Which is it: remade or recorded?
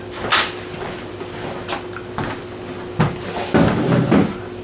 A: recorded